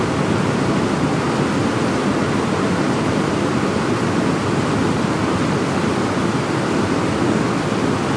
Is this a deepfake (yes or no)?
no